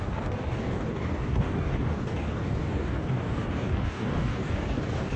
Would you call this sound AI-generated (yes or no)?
yes